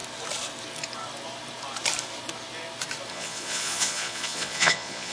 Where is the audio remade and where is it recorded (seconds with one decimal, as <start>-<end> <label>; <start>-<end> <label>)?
0.0-3.1 recorded; 3.1-5.1 remade